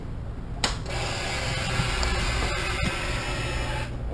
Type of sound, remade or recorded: recorded